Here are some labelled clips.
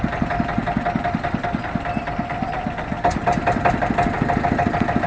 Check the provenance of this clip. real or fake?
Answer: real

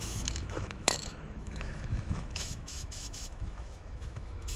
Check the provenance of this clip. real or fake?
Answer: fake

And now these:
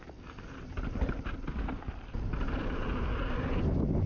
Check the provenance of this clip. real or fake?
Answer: real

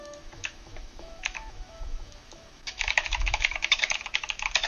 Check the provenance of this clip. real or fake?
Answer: fake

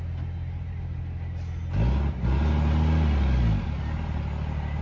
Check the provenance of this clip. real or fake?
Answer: real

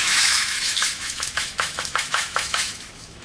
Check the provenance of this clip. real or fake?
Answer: fake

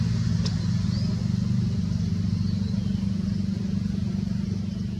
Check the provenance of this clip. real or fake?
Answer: real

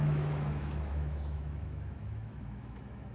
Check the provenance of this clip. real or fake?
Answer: fake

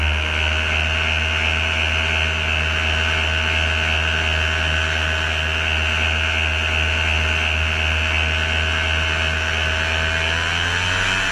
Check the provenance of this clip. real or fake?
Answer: real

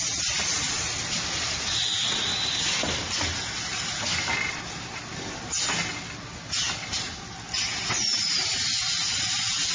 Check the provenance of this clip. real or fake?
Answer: real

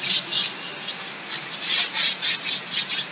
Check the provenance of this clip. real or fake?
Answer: real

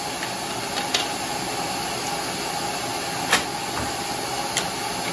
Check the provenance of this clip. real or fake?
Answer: real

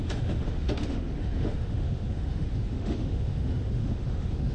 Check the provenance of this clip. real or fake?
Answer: fake